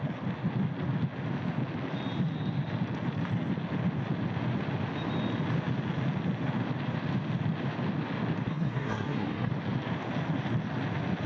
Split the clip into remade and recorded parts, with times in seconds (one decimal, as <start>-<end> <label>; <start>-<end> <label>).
0.0-8.5 recorded; 8.5-9.5 remade; 9.5-11.3 recorded